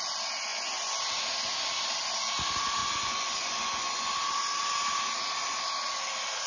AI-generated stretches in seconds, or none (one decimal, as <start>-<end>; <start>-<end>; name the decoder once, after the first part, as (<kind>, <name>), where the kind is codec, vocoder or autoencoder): 0.5-1.0 (vocoder, Vocos); 2.8-4.1